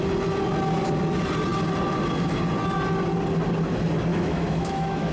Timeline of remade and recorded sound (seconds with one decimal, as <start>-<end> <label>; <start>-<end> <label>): 0.0-4.1 recorded; 4.1-5.1 remade